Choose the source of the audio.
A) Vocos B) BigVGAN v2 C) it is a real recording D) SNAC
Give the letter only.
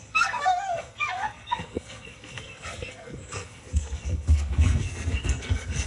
D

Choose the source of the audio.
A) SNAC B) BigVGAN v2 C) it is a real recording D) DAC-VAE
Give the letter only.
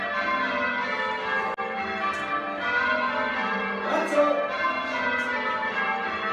C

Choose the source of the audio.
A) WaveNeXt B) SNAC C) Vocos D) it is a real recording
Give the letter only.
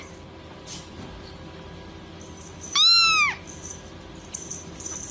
D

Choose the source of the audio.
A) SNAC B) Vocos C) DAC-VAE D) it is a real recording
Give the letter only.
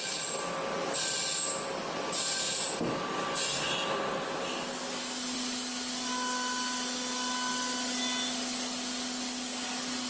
D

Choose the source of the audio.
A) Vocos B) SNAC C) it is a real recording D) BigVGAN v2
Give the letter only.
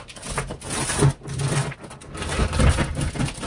C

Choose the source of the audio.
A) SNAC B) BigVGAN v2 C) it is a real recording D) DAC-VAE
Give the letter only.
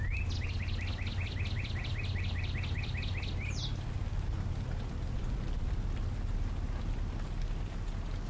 C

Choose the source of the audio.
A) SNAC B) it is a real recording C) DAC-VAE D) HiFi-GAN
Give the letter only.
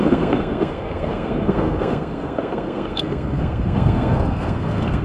A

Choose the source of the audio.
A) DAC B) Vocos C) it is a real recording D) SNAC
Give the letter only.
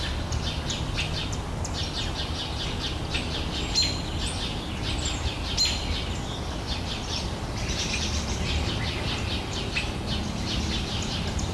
C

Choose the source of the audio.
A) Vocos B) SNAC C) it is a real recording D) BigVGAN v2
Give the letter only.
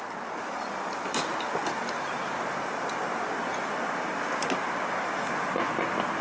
C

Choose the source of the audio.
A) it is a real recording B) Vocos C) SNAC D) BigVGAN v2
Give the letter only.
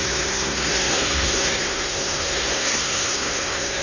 C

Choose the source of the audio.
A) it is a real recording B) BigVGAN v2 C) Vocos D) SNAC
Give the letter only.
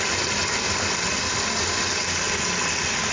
A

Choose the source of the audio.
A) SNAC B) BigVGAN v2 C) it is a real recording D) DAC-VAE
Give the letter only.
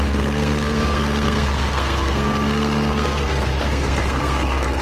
A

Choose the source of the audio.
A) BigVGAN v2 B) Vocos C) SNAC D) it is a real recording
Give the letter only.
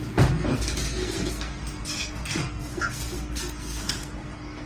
C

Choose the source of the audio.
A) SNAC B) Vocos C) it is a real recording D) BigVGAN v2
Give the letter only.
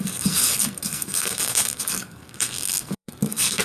A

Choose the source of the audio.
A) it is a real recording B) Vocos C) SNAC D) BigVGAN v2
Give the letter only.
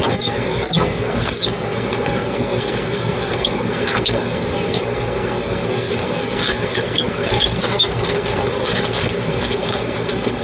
C